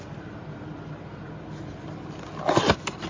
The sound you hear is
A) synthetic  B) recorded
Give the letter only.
B